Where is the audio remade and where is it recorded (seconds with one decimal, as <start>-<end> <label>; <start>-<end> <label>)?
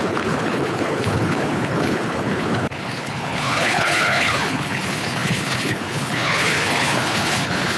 0.0-7.8 remade